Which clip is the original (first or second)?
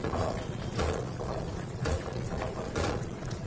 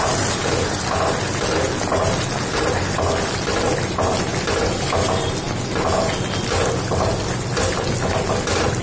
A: second